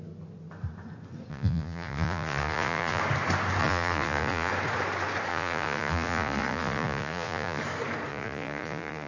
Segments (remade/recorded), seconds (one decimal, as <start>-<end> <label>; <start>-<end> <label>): 0.0-1.3 recorded; 1.3-3.0 remade; 3.0-3.6 recorded; 3.6-4.5 remade; 4.5-5.3 recorded; 5.3-7.6 remade; 7.6-8.1 recorded; 8.1-9.1 remade